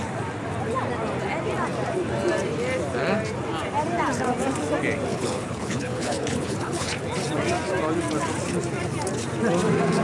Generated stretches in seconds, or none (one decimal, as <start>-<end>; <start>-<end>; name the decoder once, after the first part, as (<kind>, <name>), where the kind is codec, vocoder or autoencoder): 5.1-6.9 (codec, HILCodec)